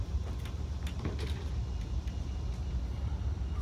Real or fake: real